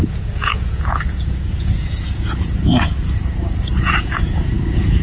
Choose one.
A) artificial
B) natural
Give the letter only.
A